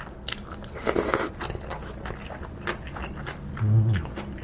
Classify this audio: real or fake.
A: real